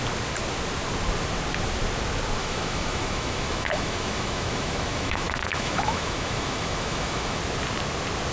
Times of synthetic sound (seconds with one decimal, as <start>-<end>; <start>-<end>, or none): 2.4-7.4